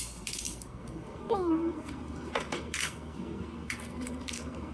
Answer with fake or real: fake